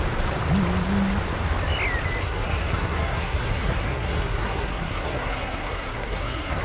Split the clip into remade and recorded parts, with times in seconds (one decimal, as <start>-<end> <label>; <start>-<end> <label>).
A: 0.0-2.2 recorded; 2.2-6.6 remade

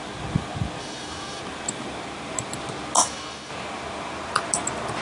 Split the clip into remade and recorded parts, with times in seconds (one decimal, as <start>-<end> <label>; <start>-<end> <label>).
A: 0.0-0.8 recorded; 0.8-1.4 remade; 1.4-3.0 recorded; 3.0-3.5 remade; 3.5-5.0 recorded

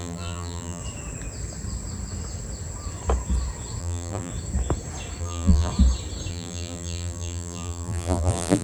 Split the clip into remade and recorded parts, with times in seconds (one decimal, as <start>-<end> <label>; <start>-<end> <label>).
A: 0.0-0.8 remade; 0.8-3.8 recorded; 3.8-4.3 remade; 4.3-5.2 recorded; 5.2-5.7 remade; 5.7-6.3 recorded; 6.3-8.6 remade

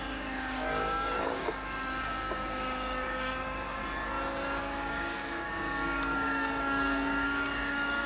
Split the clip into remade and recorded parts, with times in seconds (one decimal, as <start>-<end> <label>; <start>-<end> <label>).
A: 0.0-3.8 remade; 3.8-4.6 recorded; 4.6-8.1 remade